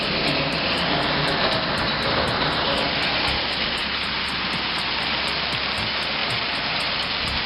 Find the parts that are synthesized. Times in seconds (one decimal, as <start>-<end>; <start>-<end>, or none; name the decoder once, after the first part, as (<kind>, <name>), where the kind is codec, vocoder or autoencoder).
6.2-6.9 (vocoder, BigVGAN v2)

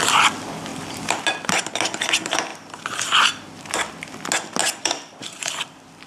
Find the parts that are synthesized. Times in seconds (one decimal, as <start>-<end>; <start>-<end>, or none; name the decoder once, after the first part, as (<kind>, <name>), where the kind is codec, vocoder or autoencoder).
0.7-1.6 (vocoder, BigVGAN v2); 2.5-3.9; 4.6-5.6

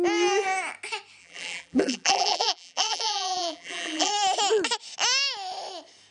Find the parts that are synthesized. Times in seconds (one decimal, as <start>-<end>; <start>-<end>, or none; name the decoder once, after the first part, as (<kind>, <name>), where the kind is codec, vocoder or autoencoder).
1.2-4.1 (vocoder, BigVGAN v2)

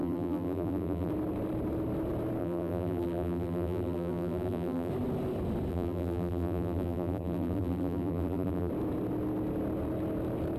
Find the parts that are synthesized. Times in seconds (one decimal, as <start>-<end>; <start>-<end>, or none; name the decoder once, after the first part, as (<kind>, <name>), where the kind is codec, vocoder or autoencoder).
0.0-1.1 (vocoder, BigVGAN v2); 2.4-4.9; 5.7-8.7